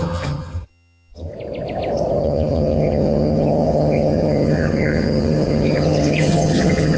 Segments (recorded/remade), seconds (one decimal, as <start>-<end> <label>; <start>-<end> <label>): 0.0-1.3 remade; 1.3-2.2 recorded; 2.2-7.0 remade